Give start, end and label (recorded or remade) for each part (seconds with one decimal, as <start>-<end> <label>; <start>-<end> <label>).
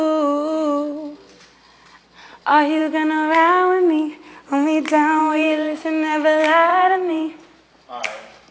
0.0-5.2 recorded; 5.2-5.8 remade; 5.8-6.7 recorded; 6.7-7.6 remade; 7.6-8.5 recorded